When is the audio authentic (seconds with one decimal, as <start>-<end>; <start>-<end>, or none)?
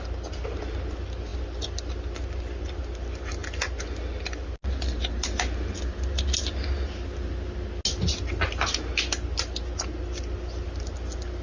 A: 0.0-11.4